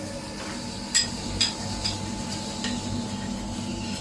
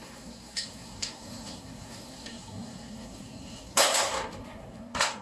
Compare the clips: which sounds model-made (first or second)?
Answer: second